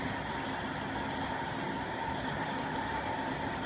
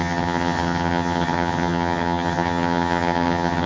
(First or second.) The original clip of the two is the first